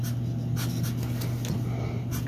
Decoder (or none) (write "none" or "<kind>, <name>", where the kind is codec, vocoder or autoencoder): none